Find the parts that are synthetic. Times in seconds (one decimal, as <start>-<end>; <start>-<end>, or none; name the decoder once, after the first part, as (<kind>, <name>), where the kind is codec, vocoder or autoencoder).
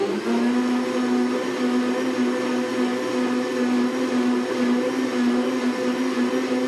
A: none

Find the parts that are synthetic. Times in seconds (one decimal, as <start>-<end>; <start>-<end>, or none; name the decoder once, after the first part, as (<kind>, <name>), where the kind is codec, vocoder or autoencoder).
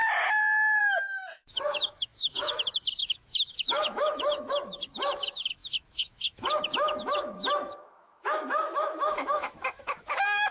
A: 0.8-10.5 (autoencoder, DAC-VAE)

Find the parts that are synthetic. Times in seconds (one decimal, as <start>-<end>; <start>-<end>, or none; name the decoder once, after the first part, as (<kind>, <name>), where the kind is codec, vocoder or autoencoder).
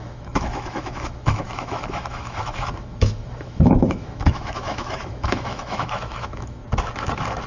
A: 0.0-6.6 (autoencoder, DAC-VAE)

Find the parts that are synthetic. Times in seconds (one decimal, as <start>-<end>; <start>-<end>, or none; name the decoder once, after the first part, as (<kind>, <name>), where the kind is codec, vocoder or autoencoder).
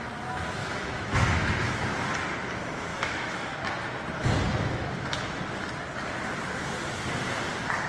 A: 0.6-1.9 (autoencoder, DAC-VAE); 2.9-3.6; 4.5-5.4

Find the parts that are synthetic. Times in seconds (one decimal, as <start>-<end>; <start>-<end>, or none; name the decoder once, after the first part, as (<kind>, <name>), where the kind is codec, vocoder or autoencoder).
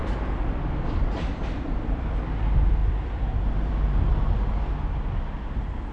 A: 0.0-2.4 (vocoder, BigVGAN v2); 2.8-4.1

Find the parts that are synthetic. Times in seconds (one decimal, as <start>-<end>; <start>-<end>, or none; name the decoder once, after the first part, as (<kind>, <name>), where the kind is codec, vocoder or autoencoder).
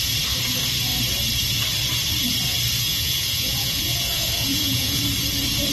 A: 2.9-5.0 (vocoder, Vocos)